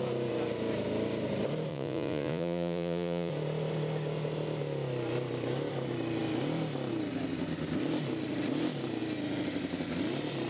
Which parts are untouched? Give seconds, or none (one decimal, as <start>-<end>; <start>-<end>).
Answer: 0.0-1.7; 3.3-10.5

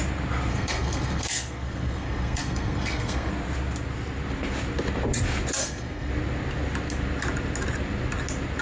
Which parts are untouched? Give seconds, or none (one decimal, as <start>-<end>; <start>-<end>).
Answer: 0.0-0.5; 3.3-5.6; 6.1-8.6

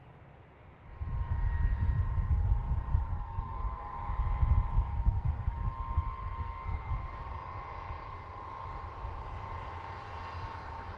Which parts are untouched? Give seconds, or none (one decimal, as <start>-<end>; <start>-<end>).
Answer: 0.0-2.9; 4.1-4.9; 7.3-11.0

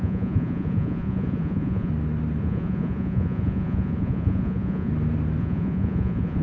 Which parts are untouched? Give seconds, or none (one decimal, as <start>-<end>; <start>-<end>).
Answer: 1.9-2.4; 4.9-5.4

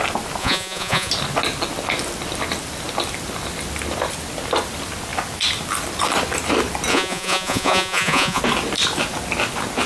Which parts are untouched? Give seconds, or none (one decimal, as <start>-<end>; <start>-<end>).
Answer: 0.0-0.4; 1.1-6.9; 8.4-9.9